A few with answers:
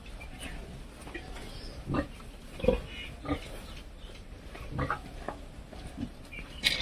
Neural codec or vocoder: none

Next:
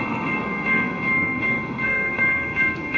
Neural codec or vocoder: codec, SNAC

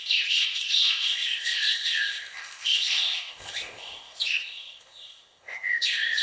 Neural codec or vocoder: codec, ZipCodec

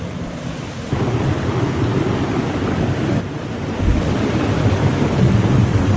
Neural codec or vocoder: none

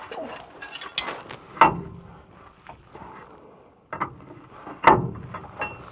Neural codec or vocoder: none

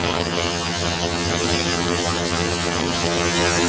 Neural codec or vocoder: vocoder, HiFi-GAN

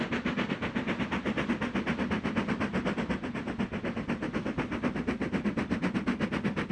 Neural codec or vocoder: none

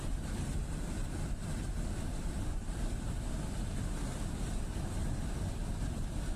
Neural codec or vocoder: vocoder, BigVGAN v2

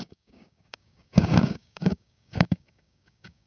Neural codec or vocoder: codec, DAC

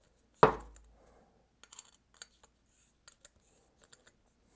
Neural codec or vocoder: none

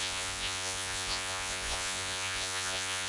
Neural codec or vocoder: vocoder, Vocos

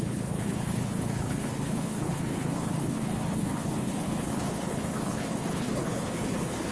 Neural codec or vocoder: codec, HILCodec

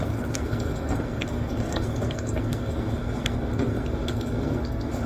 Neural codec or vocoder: codec, SNAC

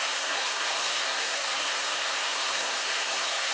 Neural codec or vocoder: codec, SNAC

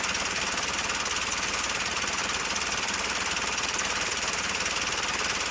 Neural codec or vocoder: none